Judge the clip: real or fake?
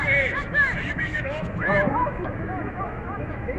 fake